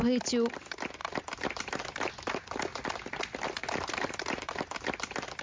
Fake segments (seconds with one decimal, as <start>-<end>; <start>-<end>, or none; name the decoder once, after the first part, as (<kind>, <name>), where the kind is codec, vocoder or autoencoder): 3.6-4.5 (vocoder, BigVGAN v2)